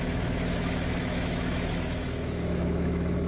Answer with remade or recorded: remade